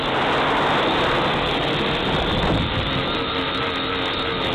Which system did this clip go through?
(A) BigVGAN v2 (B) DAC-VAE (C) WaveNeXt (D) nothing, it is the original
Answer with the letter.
D